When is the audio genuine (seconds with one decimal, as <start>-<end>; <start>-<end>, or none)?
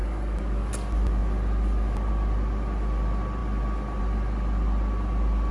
0.7-5.5